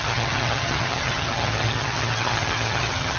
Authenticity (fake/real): fake